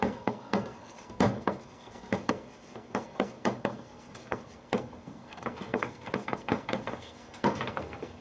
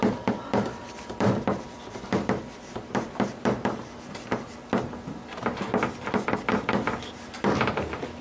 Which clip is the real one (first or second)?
second